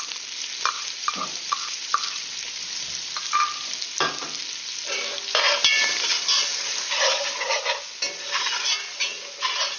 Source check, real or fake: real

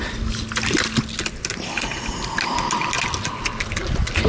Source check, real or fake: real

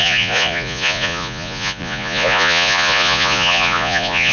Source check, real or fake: fake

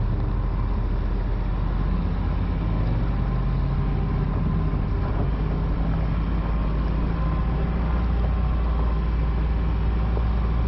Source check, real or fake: real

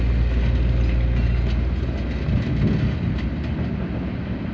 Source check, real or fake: real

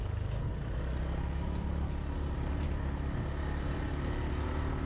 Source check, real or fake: real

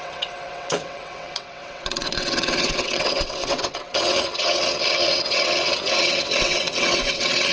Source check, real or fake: fake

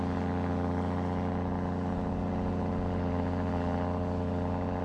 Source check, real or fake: real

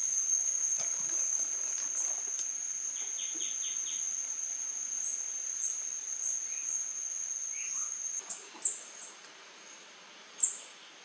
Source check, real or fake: real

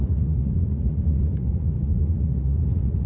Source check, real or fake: fake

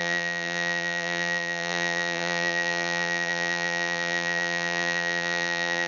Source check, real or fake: fake